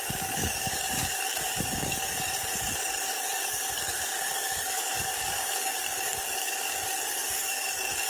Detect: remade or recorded remade